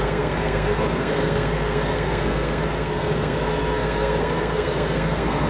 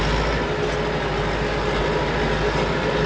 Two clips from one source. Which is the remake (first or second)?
first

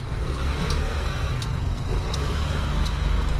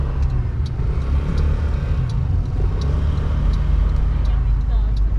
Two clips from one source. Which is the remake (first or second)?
first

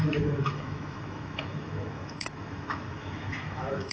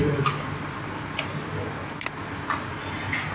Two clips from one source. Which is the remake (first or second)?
first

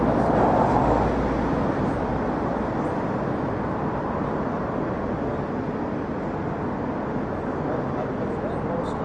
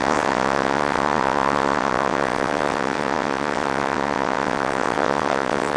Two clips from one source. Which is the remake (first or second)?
second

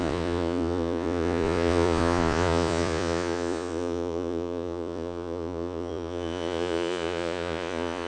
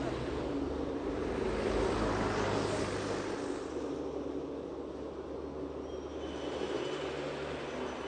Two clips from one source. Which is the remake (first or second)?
first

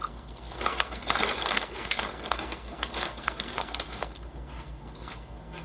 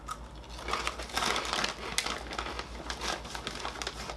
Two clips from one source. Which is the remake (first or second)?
first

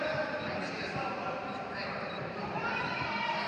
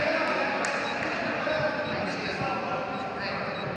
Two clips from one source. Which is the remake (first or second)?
first